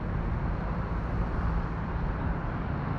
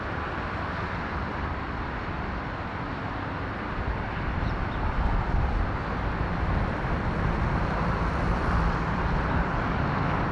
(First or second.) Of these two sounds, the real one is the first